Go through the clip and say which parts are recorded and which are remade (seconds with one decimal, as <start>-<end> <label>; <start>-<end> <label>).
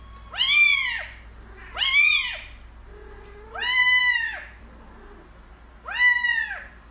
0.0-4.0 recorded; 4.0-4.6 remade; 4.6-6.9 recorded